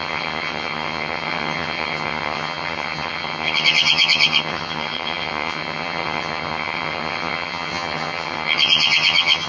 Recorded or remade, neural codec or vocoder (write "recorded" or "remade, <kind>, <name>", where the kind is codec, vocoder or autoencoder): remade, vocoder, HiFi-GAN